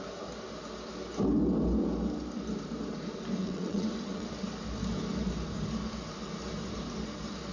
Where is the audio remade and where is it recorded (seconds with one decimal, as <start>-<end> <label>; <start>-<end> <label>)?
0.0-3.4 recorded; 3.4-4.3 remade; 4.3-7.5 recorded